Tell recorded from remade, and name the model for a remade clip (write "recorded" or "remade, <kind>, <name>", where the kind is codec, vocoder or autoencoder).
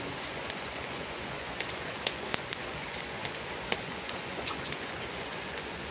remade, vocoder, Vocos